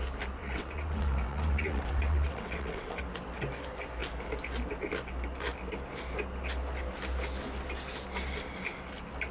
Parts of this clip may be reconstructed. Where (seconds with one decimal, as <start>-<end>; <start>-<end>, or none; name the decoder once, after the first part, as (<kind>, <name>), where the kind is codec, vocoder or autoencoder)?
0.4-3.0 (vocoder, WaveNeXt)